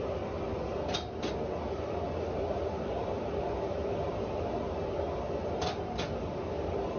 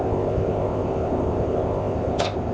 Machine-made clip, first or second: second